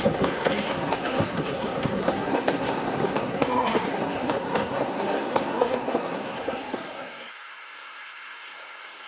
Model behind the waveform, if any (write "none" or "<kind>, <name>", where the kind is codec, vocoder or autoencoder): codec, SNAC